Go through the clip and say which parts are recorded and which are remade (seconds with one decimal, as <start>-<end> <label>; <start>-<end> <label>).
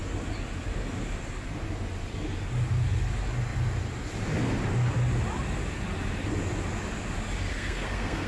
0.0-7.5 recorded; 7.5-8.3 remade